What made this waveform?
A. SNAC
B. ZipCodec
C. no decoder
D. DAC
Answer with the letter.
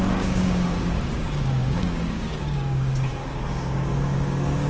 D